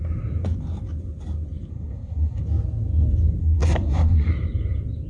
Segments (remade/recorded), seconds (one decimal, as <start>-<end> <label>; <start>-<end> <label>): 0.0-1.7 recorded; 1.7-2.4 remade; 2.4-3.4 recorded; 3.4-4.3 remade; 4.3-5.1 recorded